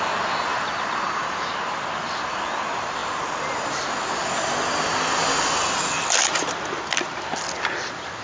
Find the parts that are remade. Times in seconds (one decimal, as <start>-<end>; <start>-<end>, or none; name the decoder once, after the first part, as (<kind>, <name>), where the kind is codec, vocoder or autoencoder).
0.5-1.5 (vocoder, BigVGAN v2)

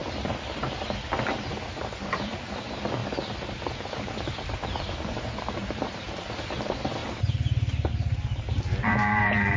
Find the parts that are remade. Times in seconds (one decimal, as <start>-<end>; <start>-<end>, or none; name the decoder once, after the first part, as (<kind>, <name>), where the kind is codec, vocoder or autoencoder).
1.3-3.0 (vocoder, BigVGAN v2); 3.7-9.6

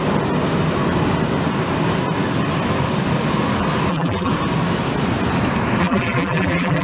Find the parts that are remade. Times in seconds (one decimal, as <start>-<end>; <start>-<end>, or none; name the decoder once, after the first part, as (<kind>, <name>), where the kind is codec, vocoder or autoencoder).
3.9-4.3 (vocoder, BigVGAN v2); 5.8-6.8